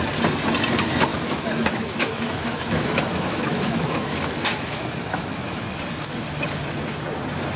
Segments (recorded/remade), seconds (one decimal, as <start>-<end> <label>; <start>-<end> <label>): 0.0-1.1 recorded; 1.1-5.6 remade; 5.6-7.6 recorded